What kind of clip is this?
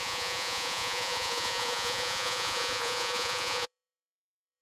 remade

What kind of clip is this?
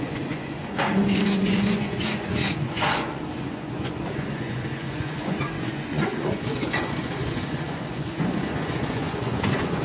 remade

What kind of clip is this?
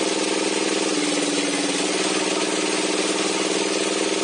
recorded